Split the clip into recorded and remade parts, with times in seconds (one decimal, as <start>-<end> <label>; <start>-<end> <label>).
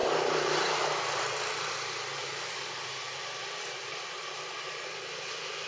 0.0-1.8 remade; 1.8-5.7 recorded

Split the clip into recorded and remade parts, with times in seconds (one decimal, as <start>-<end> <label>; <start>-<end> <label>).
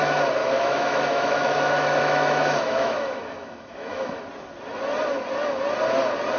0.0-0.4 recorded; 0.4-4.2 remade; 4.2-6.4 recorded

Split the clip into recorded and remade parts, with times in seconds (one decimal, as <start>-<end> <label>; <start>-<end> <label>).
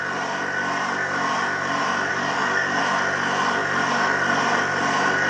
0.0-2.1 recorded; 2.1-2.8 remade; 2.8-5.3 recorded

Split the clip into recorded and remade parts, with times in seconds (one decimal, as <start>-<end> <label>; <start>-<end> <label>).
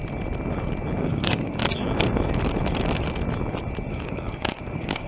0.0-1.0 recorded; 1.0-1.6 remade; 1.6-3.9 recorded; 3.9-5.1 remade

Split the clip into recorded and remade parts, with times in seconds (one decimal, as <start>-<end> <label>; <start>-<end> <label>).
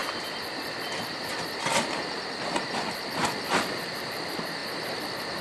0.0-5.4 recorded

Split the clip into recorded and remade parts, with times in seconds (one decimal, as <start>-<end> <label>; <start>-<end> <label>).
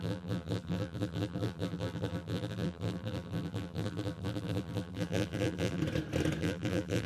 0.0-5.8 remade; 5.8-6.4 recorded; 6.4-7.1 remade